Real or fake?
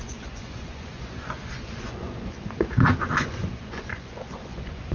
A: fake